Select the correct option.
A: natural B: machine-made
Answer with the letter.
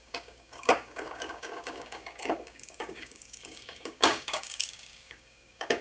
B